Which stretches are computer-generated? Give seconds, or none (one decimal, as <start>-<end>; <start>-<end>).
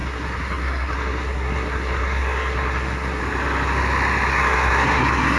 0.0-3.2; 4.3-5.4